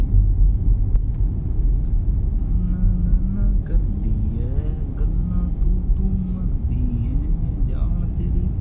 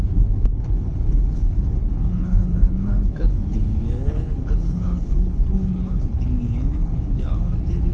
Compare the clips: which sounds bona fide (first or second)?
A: first